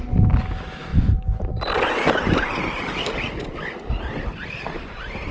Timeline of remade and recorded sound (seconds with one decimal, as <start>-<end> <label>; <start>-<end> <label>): 0.0-5.3 recorded